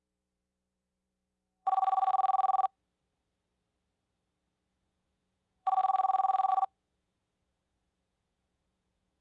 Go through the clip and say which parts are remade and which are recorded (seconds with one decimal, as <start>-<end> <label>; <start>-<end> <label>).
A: 0.0-2.1 remade; 2.1-4.7 recorded; 4.7-9.2 remade